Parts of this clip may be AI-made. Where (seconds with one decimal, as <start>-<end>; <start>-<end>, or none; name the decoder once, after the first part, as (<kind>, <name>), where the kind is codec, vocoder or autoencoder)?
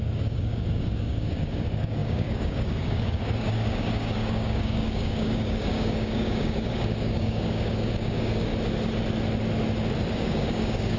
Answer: 0.0-8.5 (codec, DAC); 10.1-11.0